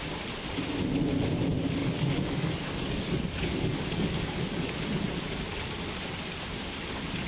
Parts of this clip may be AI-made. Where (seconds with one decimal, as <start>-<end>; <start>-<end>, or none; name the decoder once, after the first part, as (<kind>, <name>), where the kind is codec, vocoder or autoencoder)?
1.8-4.7 (codec, DAC)